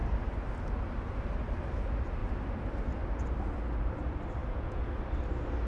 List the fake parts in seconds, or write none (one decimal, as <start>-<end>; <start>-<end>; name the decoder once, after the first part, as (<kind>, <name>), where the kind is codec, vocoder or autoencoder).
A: 4.4-4.9 (vocoder, Vocos)